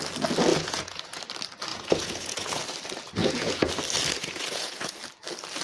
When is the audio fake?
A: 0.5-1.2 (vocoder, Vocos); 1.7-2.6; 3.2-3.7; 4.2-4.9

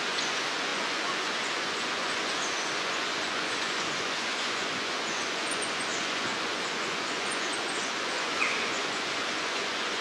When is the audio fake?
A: 0.0-10.0 (vocoder, Vocos)